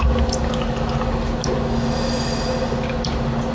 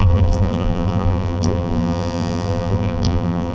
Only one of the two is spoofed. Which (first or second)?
second